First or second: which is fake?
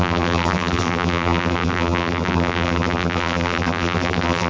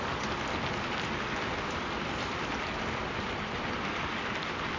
first